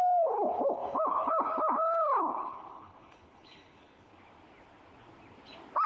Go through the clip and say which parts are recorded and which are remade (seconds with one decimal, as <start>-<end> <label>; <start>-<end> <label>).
0.0-4.1 remade; 4.1-5.9 recorded